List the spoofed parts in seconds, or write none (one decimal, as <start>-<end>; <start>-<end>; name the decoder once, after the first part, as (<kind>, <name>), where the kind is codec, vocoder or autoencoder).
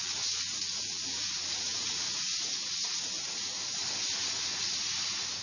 0.0-3.6 (vocoder, Vocos)